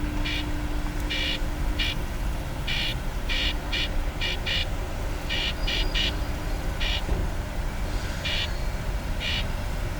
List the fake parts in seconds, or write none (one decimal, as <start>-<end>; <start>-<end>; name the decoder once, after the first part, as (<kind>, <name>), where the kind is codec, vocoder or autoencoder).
2.9-3.4 (vocoder, BigVGAN v2); 4.6-5.1; 5.6-6.4; 7.2-7.7